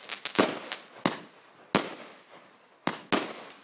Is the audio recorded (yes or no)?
yes